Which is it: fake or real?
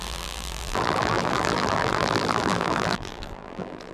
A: fake